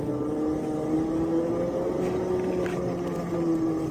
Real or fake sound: real